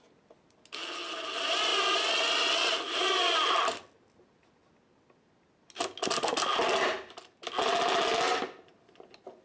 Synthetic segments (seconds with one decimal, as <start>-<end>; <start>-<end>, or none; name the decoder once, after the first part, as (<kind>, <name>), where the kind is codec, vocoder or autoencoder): none

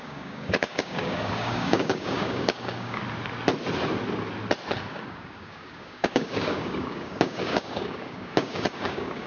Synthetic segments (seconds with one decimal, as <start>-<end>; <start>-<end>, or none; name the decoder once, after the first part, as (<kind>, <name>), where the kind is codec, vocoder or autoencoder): 0.0-3.0 (codec, DAC); 4.9-9.3

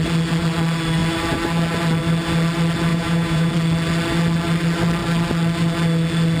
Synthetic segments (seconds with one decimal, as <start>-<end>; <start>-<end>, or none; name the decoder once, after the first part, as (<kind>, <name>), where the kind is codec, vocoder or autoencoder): 2.9-3.5 (vocoder, Vocos)

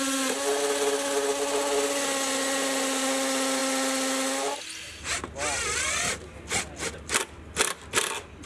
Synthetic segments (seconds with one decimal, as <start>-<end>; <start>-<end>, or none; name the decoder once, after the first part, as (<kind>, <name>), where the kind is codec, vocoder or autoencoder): none

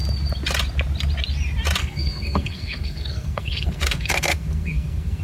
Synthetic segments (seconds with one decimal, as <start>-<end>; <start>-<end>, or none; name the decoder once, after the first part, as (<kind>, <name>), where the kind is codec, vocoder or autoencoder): 1.8-5.2 (codec, SNAC)

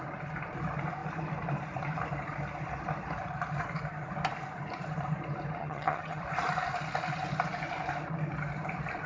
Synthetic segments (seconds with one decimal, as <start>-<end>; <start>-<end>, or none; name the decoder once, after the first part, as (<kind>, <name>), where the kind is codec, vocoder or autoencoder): 5.6-6.2 (vocoder, HiFi-GAN)

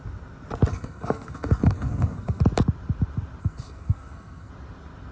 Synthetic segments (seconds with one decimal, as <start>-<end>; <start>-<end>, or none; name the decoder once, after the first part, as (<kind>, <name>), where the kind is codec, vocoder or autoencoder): 0.7-2.4 (codec, SNAC); 3.4-4.5

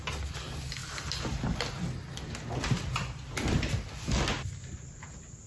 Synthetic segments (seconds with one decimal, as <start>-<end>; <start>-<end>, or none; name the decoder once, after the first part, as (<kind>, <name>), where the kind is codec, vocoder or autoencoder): none